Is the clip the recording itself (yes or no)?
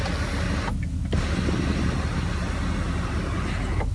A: yes